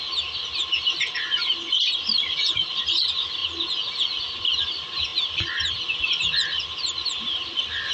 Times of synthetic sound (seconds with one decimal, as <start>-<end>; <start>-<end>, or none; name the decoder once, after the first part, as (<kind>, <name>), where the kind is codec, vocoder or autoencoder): 0.0-3.4 (vocoder, BigVGAN v2); 4.2-5.1; 6.0-7.9